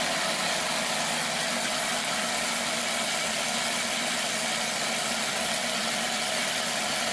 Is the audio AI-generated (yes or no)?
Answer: no